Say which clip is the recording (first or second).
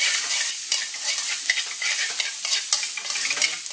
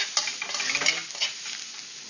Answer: second